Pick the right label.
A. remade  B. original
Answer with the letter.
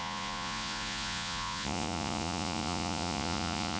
A